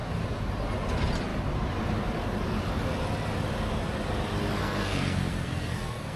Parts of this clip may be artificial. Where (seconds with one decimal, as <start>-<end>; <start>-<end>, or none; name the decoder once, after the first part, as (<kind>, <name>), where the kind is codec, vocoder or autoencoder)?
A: 4.6-6.2 (codec, SNAC)